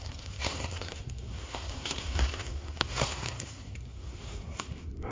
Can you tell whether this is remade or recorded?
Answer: remade